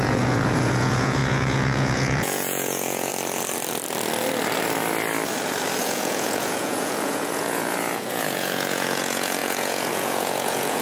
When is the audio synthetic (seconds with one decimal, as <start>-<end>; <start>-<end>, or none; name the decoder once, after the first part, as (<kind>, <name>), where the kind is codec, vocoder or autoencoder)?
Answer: 0.0-3.1 (vocoder, Vocos); 5.8-10.8